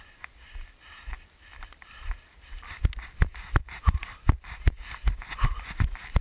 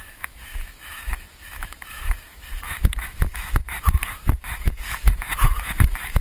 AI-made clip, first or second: second